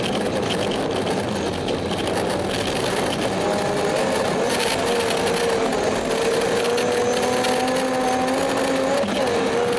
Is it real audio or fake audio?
real